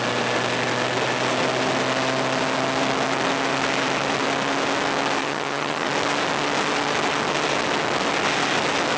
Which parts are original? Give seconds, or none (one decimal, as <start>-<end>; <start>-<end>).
0.0-5.2; 5.9-9.0